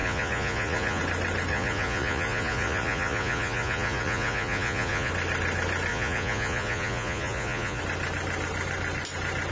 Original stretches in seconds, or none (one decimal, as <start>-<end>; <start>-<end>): 1.0-1.5; 5.1-5.9; 7.8-9.5